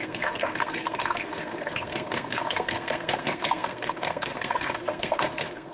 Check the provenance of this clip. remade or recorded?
remade